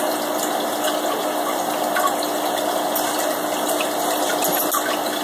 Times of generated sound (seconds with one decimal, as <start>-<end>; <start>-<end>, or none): none